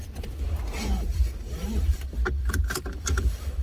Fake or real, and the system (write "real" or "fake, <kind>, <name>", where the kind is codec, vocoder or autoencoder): fake, vocoder, BigVGAN v2